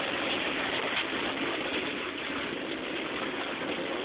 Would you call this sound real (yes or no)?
yes